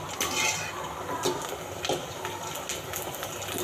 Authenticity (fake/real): real